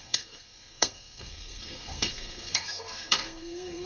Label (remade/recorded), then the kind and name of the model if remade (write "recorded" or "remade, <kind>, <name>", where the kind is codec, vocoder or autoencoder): remade, codec, SNAC